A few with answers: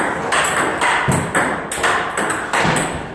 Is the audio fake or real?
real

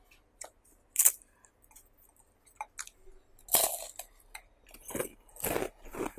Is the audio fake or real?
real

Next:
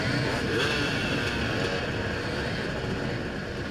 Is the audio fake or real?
real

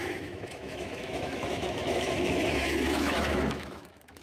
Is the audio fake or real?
fake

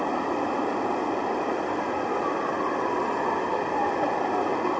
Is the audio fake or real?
real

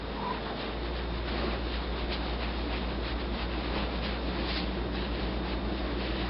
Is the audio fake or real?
real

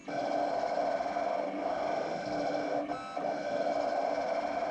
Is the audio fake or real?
real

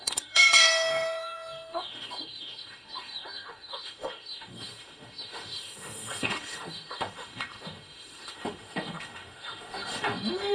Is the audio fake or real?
fake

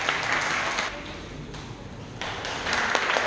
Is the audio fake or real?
real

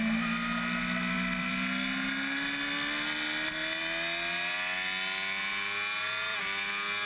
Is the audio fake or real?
real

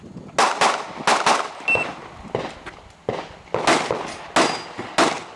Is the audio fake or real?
real